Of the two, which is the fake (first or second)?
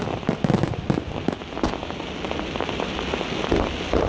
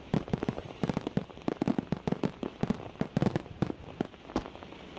second